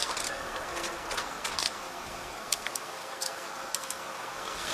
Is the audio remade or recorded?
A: remade